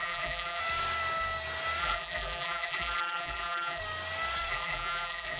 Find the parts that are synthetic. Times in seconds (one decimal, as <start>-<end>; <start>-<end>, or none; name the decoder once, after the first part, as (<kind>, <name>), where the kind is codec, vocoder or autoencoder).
0.0-0.6 (vocoder, BigVGAN v2); 1.8-3.8; 4.5-5.4